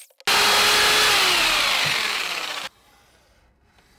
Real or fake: real